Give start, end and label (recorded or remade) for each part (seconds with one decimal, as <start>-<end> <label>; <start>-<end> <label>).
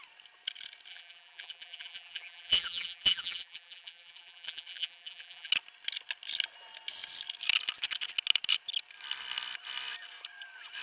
0.0-0.9 recorded; 0.9-5.5 remade; 5.5-10.8 recorded